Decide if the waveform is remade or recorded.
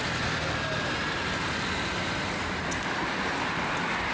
recorded